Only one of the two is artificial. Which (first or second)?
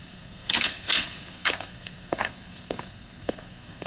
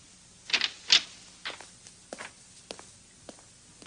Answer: first